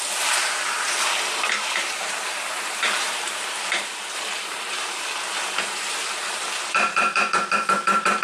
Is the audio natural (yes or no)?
no